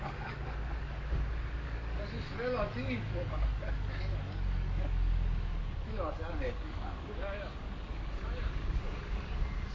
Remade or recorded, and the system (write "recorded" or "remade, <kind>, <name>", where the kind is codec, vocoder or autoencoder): remade, codec, DAC